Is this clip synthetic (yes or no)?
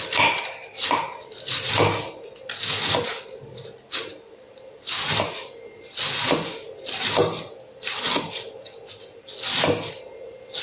no